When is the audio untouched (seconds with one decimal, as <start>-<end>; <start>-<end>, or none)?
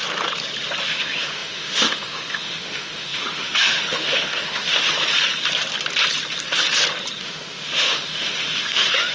0.0-0.8; 4.9-7.2